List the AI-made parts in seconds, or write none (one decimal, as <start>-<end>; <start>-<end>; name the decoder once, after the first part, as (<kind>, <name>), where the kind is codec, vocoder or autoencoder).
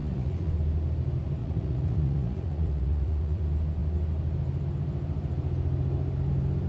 0.0-0.5 (vocoder, Vocos); 1.4-3.4